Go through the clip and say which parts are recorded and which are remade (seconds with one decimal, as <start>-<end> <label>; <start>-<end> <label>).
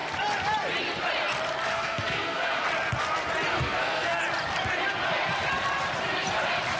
0.0-1.7 recorded; 1.7-2.5 remade; 2.5-3.5 recorded; 3.5-4.2 remade; 4.2-6.8 recorded